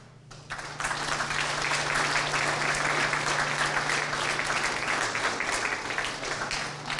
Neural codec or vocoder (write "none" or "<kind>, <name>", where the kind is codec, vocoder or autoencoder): none